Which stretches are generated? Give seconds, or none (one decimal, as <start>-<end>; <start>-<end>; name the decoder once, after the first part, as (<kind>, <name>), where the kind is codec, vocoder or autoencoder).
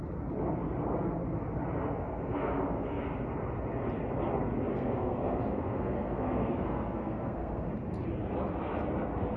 2.0-3.0 (codec, SNAC); 4.7-7.7